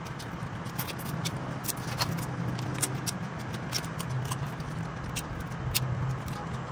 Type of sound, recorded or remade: recorded